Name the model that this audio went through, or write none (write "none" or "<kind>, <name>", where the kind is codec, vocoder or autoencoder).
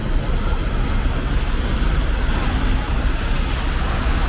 none